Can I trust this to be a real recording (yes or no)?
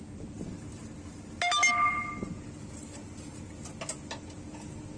yes